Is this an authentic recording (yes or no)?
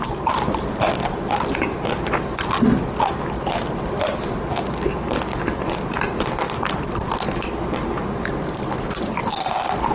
yes